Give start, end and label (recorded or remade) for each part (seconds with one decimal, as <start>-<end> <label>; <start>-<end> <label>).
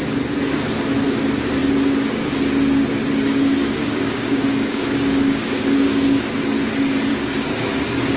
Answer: 0.0-3.8 recorded; 3.8-6.2 remade; 6.2-7.1 recorded; 7.1-7.7 remade; 7.7-8.2 recorded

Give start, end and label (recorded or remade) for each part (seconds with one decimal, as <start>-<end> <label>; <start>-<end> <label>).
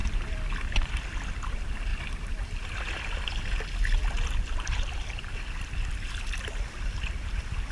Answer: 0.0-7.7 recorded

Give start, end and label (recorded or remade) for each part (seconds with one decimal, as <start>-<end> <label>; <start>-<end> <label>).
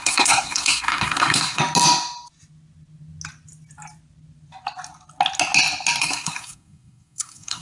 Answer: 0.0-1.6 remade; 1.6-6.0 recorded; 6.0-7.6 remade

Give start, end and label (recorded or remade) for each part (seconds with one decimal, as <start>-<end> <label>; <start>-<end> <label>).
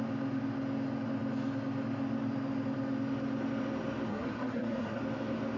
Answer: 0.0-4.1 recorded; 4.1-5.0 remade; 5.0-5.6 recorded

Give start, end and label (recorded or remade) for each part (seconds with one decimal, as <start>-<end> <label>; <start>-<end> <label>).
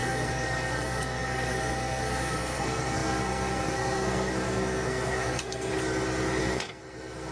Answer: 0.0-5.7 remade; 5.7-6.4 recorded; 6.4-7.3 remade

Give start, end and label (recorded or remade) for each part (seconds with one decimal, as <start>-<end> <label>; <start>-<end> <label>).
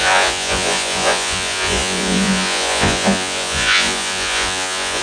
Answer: 0.0-5.0 remade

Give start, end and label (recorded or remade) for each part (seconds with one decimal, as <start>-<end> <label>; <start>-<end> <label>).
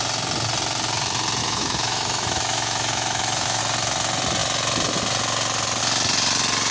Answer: 0.0-1.4 recorded; 1.4-3.6 remade; 3.6-6.7 recorded